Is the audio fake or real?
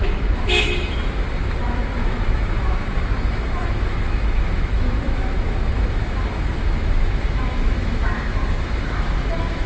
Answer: fake